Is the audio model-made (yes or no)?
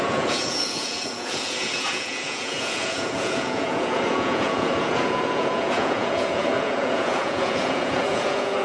yes